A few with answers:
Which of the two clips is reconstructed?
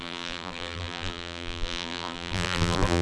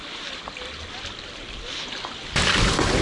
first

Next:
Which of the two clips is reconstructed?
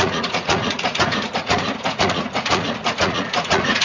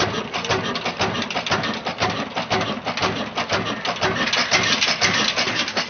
first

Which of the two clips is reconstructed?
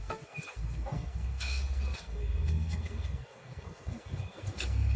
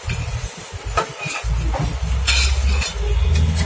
first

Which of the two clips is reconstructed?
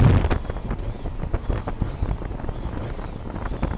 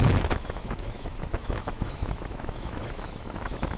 second